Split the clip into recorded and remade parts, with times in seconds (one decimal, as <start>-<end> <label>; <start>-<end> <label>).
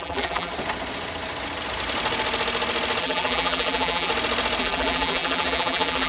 0.0-0.5 remade; 0.5-3.0 recorded; 3.0-4.1 remade; 4.1-4.6 recorded; 4.6-6.1 remade